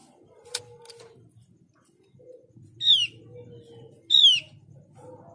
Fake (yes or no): no